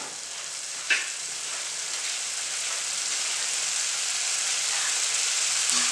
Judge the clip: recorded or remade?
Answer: recorded